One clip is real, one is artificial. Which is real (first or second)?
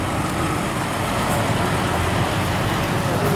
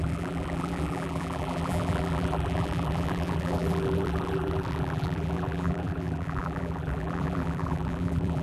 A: first